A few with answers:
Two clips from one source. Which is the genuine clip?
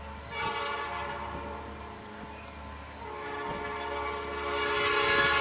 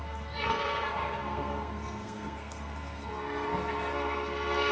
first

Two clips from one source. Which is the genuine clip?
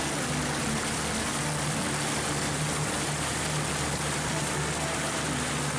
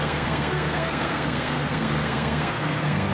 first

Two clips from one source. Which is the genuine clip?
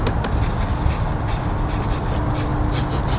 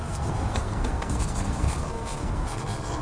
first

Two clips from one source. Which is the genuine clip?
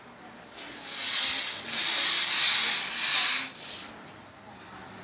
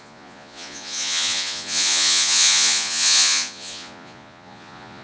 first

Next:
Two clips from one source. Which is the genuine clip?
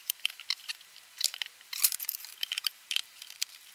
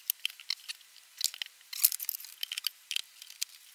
second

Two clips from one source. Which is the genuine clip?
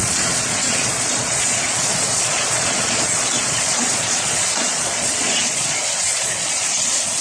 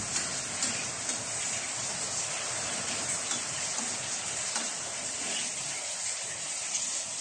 second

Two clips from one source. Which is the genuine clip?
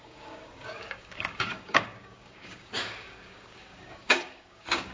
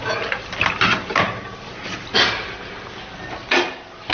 second